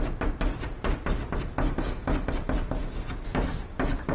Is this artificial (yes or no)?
no